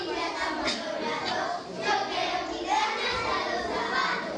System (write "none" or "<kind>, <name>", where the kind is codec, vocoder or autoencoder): none